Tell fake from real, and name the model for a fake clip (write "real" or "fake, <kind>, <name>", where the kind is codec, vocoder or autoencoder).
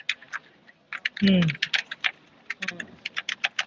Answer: real